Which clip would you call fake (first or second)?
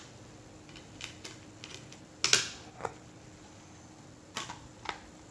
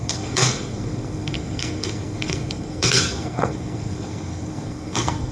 second